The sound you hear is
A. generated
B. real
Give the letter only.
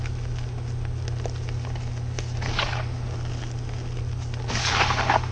B